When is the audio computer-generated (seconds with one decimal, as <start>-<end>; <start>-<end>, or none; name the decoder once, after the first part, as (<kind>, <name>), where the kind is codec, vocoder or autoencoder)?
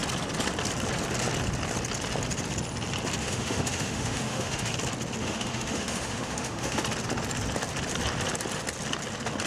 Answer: 3.2-4.7 (autoencoder, DAC-VAE); 5.2-6.8